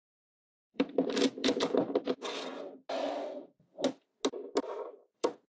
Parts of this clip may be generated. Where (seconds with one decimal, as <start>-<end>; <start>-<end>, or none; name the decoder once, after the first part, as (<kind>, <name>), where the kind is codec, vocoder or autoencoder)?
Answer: 0.0-2.5 (vocoder, BigVGAN v2); 4.9-5.5